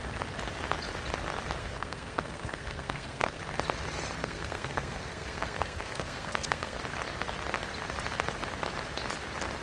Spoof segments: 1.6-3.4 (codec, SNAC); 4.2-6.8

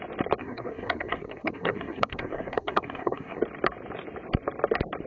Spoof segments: 0.4-3.4 (codec, SNAC)

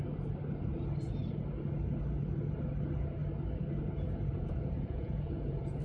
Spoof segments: 4.3-5.8 (vocoder, Vocos)

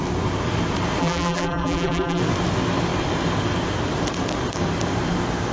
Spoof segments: 1.0-2.2 (vocoder, BigVGAN v2)

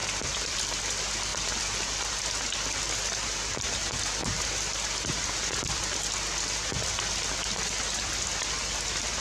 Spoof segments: 0.0-0.8 (vocoder, BigVGAN v2); 1.3-2.2

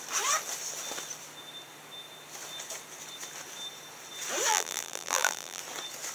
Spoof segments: 4.5-5.6 (vocoder, BigVGAN v2)

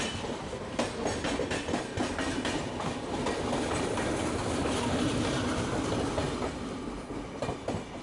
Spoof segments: none